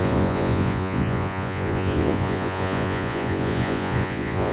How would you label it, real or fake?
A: fake